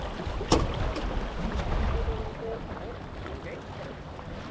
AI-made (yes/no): no